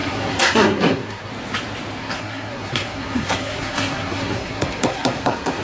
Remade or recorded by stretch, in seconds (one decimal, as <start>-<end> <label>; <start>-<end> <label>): 0.0-1.3 remade; 1.3-2.0 recorded; 2.0-5.6 remade